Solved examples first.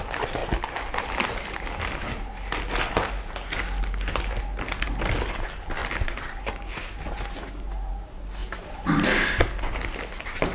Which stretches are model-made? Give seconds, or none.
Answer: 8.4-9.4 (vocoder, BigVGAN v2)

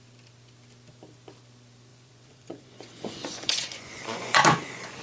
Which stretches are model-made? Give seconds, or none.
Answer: 1.9-5.0 (vocoder, Vocos)

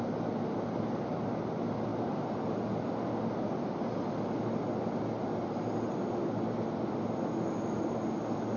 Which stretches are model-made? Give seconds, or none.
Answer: none

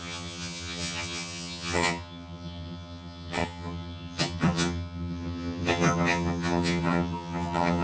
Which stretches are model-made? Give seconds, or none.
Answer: 0.0-7.8 (vocoder, HiFi-GAN)

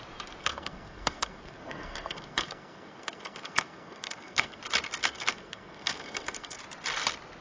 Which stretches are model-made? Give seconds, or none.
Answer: 0.4-4.6 (codec, SNAC); 5.0-6.6

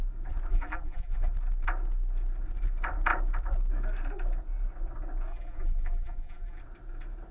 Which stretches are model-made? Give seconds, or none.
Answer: 0.5-1.3 (vocoder, BigVGAN v2); 5.3-6.6

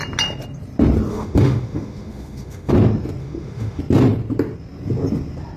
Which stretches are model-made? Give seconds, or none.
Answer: 1.1-2.7 (autoencoder, DAC-VAE); 3.2-3.8

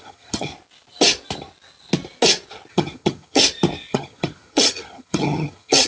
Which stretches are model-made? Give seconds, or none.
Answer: 0.0-0.5 (vocoder, HiFi-GAN); 2.7-3.4; 3.9-5.9